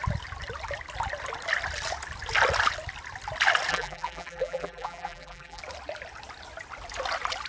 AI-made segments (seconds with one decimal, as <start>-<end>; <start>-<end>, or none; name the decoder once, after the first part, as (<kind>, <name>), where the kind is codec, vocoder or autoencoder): 3.7-5.6 (vocoder, BigVGAN v2)